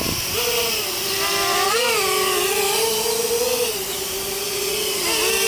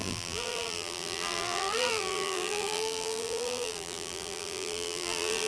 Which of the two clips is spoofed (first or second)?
second